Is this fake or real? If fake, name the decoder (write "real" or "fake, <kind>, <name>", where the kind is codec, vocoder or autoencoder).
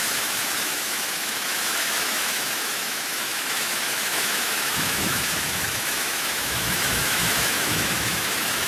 fake, autoencoder, DAC-VAE